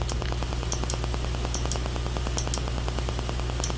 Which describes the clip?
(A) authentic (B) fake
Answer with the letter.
A